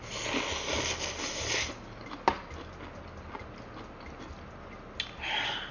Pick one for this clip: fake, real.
real